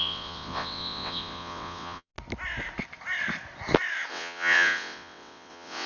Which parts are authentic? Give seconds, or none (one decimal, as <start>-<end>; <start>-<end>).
2.1-4.1